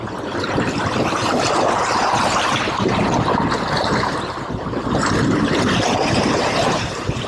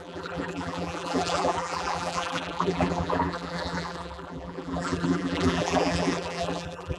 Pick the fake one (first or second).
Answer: second